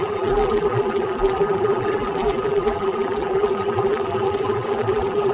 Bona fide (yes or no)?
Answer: no